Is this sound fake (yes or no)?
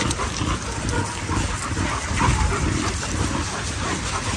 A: no